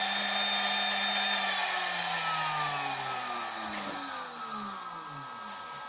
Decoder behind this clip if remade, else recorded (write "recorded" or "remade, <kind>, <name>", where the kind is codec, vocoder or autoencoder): recorded